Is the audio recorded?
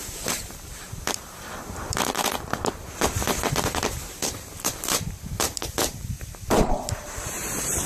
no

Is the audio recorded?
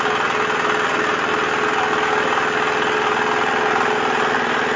yes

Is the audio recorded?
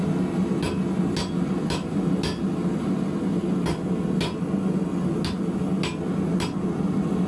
yes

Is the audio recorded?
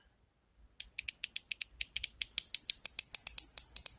yes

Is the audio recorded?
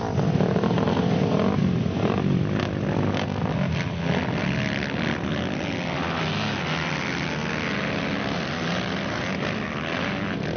yes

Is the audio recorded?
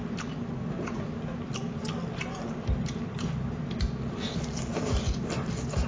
yes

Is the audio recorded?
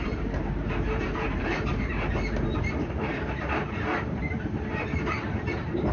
no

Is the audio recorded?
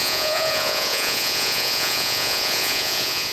no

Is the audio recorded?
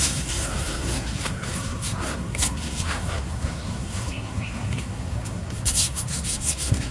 no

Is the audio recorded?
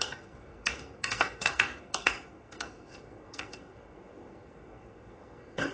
no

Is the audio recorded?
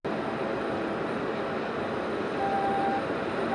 yes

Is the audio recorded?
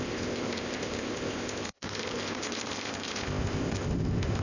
no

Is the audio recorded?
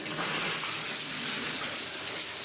yes